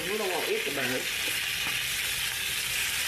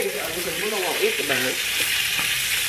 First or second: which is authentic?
first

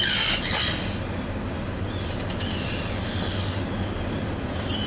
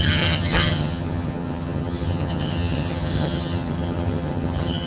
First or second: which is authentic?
first